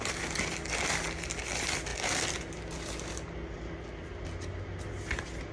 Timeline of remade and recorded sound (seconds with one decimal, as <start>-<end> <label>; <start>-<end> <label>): 0.0-5.5 recorded